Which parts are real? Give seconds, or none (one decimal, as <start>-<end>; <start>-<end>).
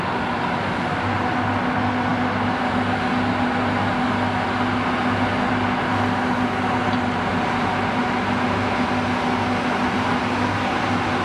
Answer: 0.0-11.2